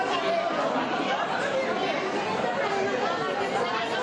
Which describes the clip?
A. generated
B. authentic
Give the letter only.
B